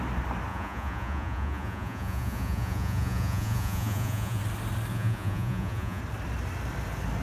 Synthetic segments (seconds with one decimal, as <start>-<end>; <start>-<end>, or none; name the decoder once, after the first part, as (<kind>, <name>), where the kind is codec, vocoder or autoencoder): 0.5-4.4 (vocoder, Vocos); 4.9-6.0